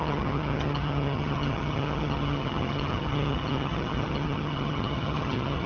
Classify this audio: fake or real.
fake